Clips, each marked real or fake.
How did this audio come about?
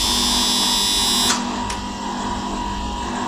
real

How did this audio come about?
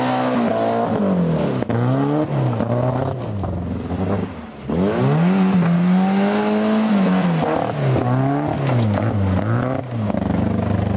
real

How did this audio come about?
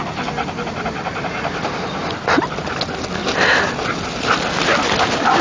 real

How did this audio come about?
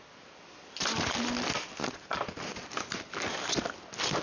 real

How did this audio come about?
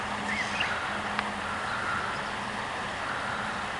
real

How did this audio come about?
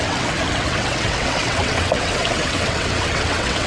fake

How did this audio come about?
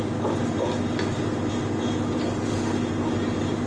real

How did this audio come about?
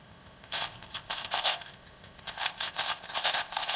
fake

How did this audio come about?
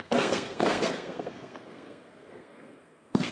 fake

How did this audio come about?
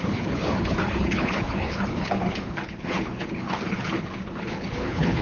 fake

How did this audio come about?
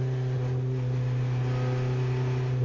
real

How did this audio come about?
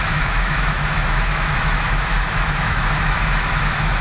fake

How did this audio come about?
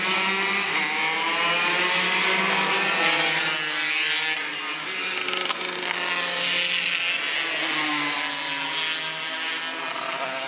real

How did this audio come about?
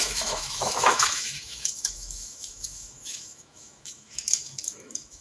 fake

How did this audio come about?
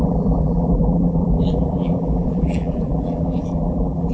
fake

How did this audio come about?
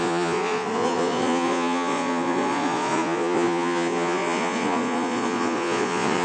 fake